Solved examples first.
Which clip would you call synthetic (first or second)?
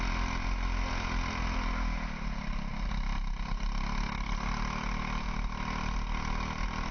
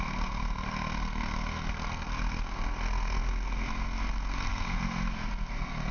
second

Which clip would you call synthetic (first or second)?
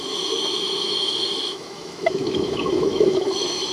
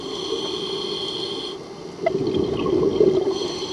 first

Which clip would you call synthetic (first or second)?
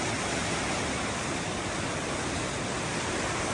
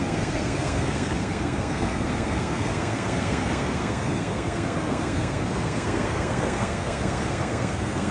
second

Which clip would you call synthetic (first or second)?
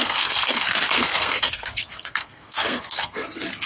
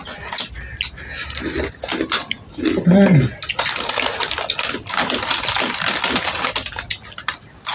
first